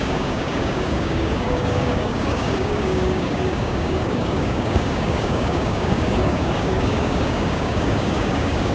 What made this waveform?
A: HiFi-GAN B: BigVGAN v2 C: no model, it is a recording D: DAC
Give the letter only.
D